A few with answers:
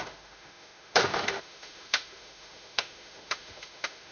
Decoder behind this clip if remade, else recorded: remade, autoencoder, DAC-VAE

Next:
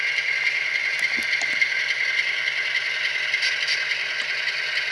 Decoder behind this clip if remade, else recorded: recorded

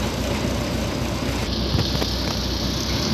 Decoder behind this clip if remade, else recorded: recorded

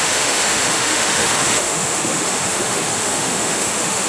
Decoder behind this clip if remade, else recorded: remade, autoencoder, DAC-VAE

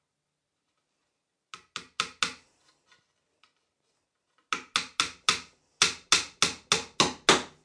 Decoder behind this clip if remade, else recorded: recorded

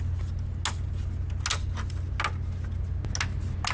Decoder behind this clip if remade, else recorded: recorded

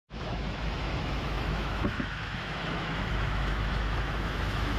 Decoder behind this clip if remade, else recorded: remade, autoencoder, DAC-VAE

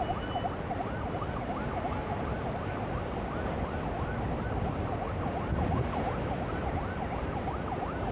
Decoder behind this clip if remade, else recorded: recorded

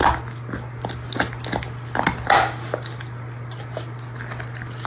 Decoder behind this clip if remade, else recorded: recorded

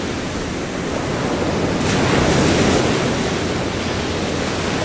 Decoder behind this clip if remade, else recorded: recorded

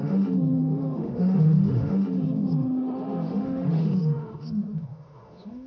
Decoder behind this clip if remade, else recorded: remade, autoencoder, DAC-VAE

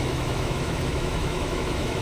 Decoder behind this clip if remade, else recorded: remade, autoencoder, DAC-VAE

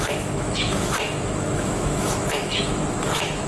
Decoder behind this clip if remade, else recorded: remade, autoencoder, DAC-VAE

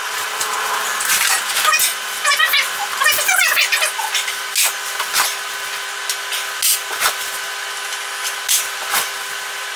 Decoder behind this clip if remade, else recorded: recorded